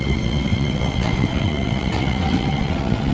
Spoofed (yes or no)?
yes